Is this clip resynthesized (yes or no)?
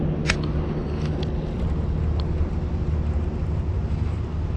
no